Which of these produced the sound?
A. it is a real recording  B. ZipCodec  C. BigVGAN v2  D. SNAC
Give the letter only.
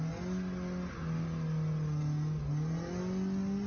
A